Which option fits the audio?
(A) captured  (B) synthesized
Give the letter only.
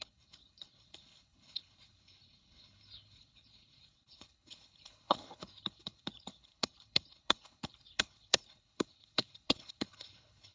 B